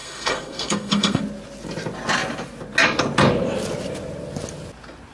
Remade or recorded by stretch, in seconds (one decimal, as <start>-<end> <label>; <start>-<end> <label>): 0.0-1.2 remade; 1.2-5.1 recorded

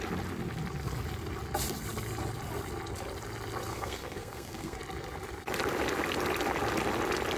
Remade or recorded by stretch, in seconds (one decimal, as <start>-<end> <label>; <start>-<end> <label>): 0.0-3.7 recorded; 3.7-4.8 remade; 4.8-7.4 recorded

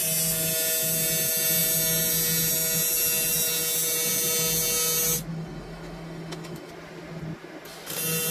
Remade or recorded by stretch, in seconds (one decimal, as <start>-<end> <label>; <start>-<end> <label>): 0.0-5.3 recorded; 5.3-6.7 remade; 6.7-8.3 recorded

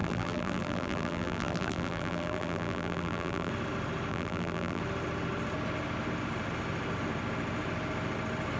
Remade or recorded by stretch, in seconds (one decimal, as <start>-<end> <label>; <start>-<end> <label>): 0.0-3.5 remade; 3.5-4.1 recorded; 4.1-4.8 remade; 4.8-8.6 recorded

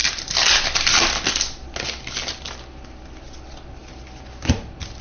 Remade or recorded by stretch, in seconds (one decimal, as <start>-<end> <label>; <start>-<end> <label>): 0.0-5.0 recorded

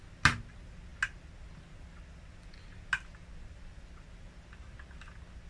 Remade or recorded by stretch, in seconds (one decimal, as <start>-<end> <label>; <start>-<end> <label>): 0.0-5.5 recorded

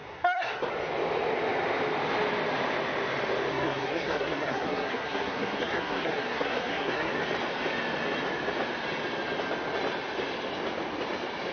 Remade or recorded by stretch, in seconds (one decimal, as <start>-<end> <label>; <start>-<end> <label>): 0.0-0.7 remade; 0.7-3.5 recorded; 3.5-7.1 remade; 7.1-11.5 recorded